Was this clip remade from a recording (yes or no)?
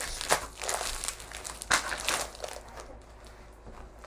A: no